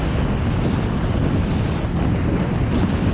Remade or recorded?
recorded